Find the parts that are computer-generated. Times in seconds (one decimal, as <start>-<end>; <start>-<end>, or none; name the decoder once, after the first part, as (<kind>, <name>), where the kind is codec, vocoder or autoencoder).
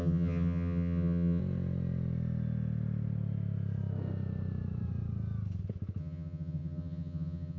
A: 0.0-1.4 (vocoder, HiFi-GAN); 6.0-7.6